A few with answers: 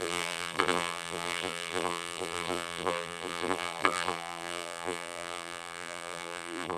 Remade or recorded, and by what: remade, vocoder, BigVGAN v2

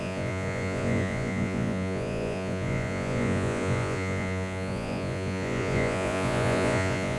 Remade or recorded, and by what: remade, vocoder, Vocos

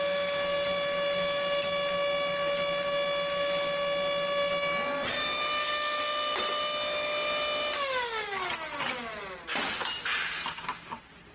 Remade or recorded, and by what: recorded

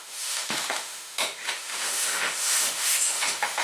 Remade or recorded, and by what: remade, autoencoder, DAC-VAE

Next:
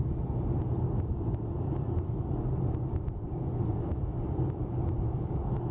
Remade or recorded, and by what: recorded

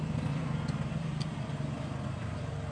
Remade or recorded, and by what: recorded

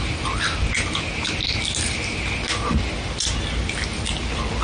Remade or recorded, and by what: recorded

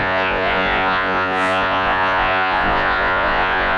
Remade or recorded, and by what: remade, vocoder, Vocos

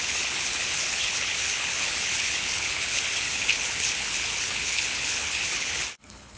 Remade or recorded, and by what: remade, codec, HILCodec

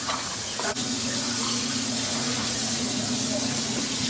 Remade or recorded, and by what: remade, vocoder, Vocos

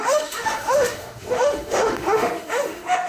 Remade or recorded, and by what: remade, autoencoder, DAC-VAE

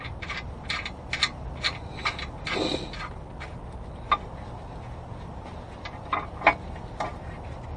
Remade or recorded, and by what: recorded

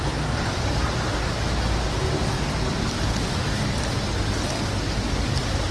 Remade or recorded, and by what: recorded